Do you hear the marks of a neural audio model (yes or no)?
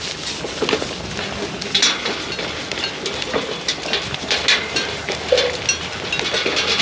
no